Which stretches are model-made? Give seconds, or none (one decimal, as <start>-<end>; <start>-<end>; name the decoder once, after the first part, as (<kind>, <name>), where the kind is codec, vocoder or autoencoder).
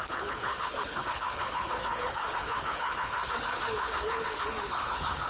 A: 0.0-5.3 (codec, HILCodec)